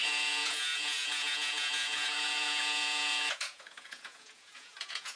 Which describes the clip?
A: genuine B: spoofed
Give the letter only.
B